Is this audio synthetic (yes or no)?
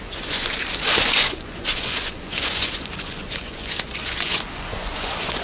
yes